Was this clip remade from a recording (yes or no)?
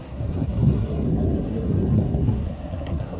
yes